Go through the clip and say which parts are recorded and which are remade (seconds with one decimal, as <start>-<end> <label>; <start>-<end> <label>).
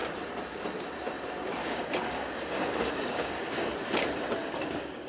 0.0-1.6 recorded; 1.6-3.7 remade; 3.7-4.4 recorded; 4.4-5.1 remade